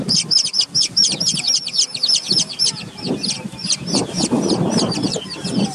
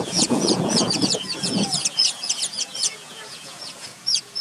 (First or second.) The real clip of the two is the first